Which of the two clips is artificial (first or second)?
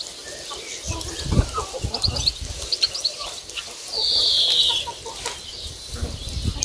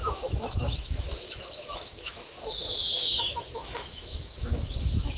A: second